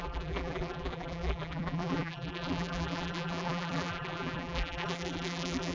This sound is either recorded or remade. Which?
remade